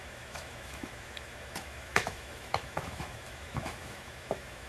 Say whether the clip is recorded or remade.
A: remade